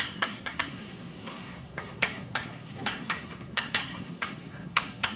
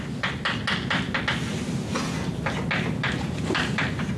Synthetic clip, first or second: first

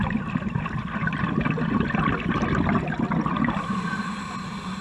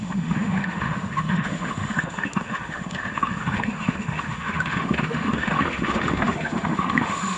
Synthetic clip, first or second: second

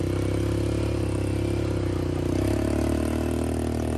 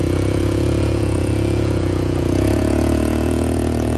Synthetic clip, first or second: second